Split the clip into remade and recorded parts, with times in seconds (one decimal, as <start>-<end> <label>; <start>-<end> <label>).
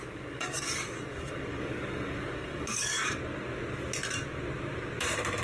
0.0-3.1 remade; 3.1-5.4 recorded